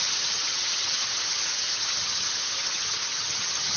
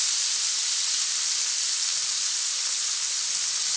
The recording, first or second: second